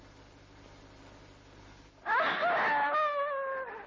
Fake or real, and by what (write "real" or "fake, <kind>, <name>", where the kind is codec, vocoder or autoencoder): real